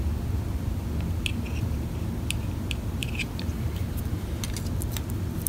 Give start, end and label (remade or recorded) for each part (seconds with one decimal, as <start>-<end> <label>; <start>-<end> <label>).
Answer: 0.0-3.0 recorded; 3.0-4.0 remade; 4.0-5.5 recorded